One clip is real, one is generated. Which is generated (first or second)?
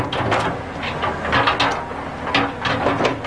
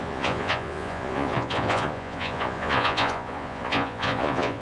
second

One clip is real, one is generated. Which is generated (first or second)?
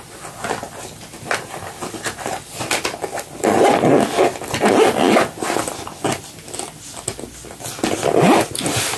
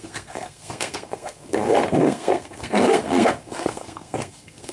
second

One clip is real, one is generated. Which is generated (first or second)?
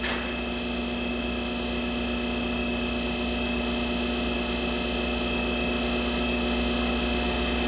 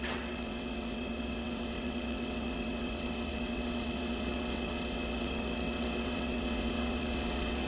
second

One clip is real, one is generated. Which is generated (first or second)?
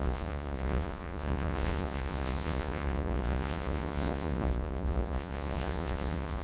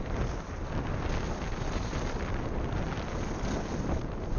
first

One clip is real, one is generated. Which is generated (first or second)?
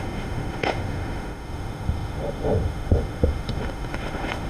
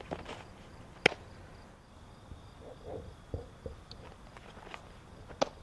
first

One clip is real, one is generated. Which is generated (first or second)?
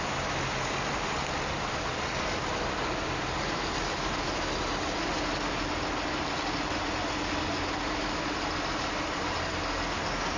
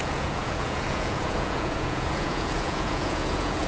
second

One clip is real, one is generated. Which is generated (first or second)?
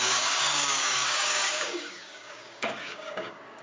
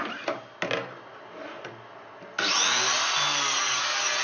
first